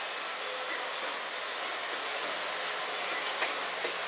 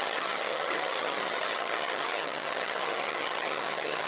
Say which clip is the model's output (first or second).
second